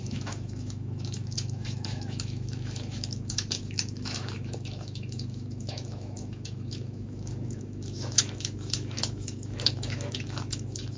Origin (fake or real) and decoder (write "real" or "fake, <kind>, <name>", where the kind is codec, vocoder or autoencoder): fake, autoencoder, DAC-VAE